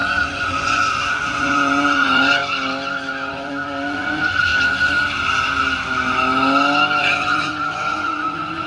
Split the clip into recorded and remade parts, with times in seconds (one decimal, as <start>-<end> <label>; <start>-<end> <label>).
0.0-2.4 remade; 2.4-3.3 recorded; 3.3-4.5 remade; 4.5-7.0 recorded; 7.0-8.7 remade